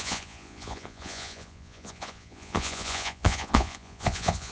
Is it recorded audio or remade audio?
remade